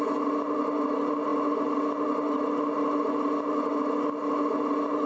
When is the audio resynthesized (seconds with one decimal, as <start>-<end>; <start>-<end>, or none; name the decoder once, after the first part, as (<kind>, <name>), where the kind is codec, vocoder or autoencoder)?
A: none